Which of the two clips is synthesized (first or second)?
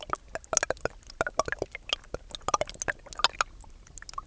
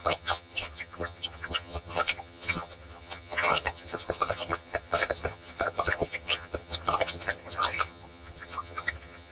second